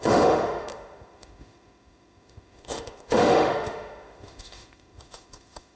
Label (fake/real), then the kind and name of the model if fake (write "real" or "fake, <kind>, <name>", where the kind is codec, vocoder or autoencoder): fake, autoencoder, DAC-VAE